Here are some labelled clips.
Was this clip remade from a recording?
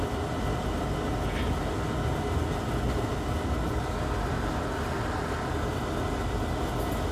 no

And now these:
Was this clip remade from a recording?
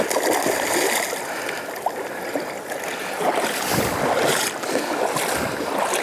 no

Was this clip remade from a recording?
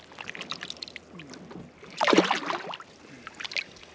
no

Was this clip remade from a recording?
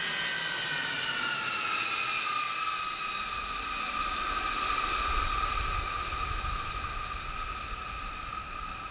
no